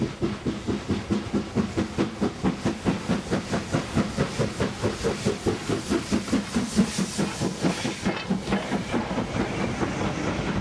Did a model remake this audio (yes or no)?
no